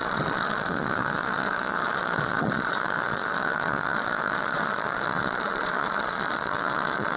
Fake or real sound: fake